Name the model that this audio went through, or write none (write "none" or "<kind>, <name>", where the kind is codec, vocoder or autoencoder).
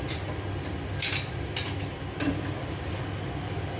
none